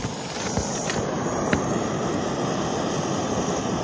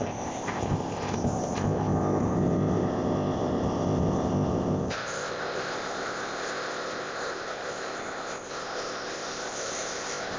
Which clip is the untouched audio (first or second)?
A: first